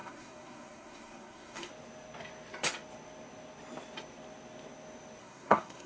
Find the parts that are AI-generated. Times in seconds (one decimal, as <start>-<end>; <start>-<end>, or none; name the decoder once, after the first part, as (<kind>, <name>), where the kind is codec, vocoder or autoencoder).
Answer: 0.0-1.7 (codec, SNAC); 5.2-5.9